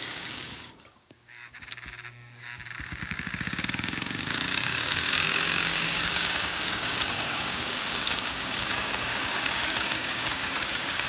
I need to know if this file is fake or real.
fake